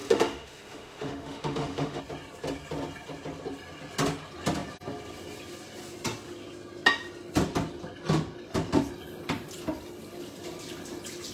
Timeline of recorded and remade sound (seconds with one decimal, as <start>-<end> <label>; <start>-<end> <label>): 0.0-2.0 remade; 2.0-11.3 recorded